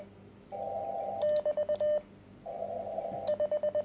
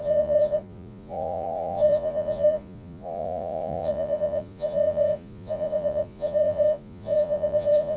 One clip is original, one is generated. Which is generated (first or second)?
second